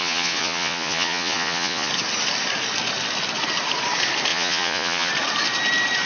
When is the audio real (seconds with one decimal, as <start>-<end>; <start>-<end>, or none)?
1.9-4.3; 5.1-6.1